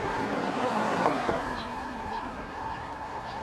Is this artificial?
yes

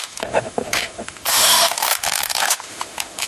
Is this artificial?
yes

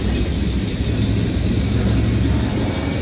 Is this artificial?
no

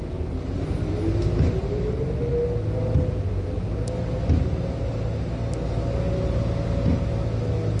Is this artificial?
no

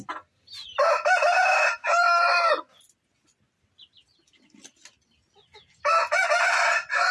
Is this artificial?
no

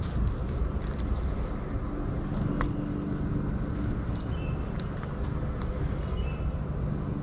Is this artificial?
no